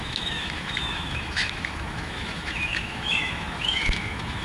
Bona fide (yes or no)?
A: no